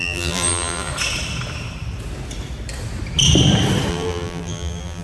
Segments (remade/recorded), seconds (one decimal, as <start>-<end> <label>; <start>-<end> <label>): 0.0-0.9 remade; 0.9-3.9 recorded; 3.9-5.0 remade